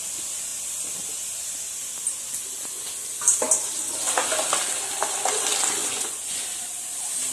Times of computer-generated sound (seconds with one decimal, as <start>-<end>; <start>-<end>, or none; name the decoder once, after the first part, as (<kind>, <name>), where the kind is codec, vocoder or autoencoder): 5.8-6.4 (vocoder, Vocos)